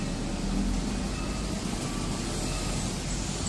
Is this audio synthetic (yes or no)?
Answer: no